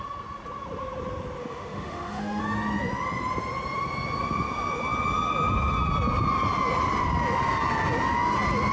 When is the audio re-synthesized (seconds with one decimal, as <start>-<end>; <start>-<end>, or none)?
1.4-2.4